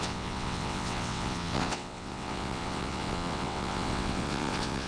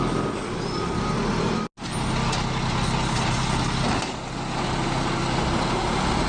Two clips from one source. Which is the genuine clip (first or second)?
second